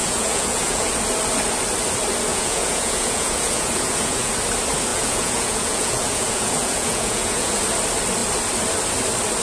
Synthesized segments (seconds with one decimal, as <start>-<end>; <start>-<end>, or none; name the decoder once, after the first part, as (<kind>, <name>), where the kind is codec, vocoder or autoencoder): 0.0-0.9 (vocoder, Vocos); 2.3-4.3; 4.9-7.6